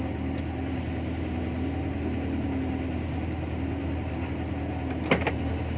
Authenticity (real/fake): real